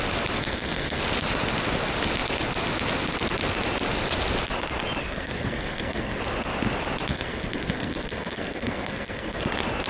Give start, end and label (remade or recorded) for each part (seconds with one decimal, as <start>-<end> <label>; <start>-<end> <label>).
0.0-0.4 recorded; 0.4-1.0 remade; 1.0-5.0 recorded; 5.0-6.2 remade; 6.2-7.1 recorded; 7.1-9.4 remade; 9.4-9.9 recorded